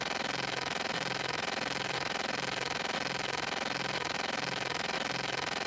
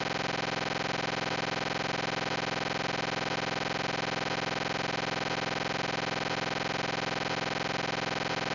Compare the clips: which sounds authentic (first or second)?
second